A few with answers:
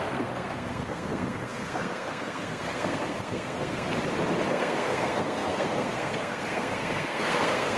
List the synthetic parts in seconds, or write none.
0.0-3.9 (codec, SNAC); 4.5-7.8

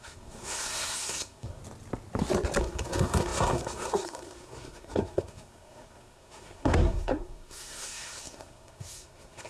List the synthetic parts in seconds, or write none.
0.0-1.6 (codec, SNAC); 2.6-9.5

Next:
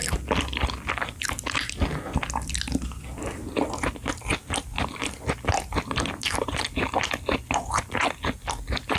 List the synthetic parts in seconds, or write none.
none

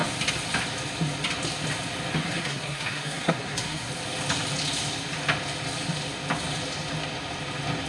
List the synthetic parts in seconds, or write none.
2.2-3.9 (codec, SNAC)